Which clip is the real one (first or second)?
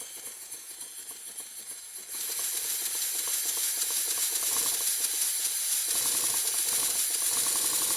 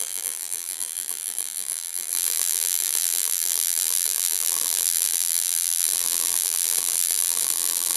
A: first